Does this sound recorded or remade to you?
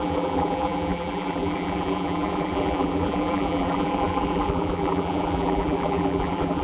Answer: remade